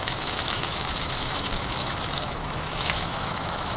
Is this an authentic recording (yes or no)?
no